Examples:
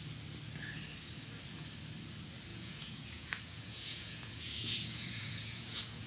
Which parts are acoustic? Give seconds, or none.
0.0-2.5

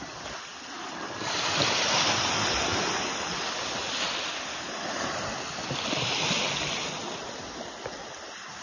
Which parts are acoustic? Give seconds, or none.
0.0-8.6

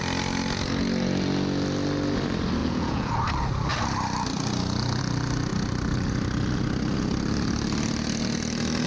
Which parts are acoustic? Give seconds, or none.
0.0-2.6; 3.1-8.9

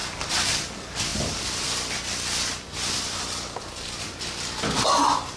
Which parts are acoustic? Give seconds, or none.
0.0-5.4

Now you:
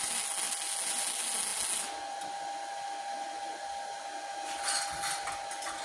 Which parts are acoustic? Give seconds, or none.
0.0-5.8

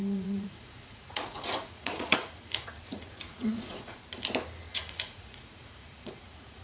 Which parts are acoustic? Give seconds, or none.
4.0-4.7